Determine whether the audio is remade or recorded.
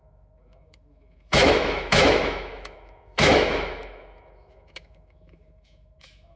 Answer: remade